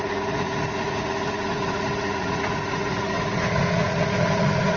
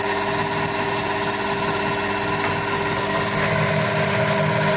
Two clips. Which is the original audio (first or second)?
second